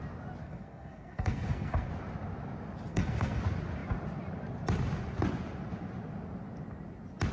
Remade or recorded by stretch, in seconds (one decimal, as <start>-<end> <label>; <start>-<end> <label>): 0.0-0.4 recorded; 0.4-1.9 remade; 1.9-2.9 recorded; 2.9-3.4 remade; 3.4-7.3 recorded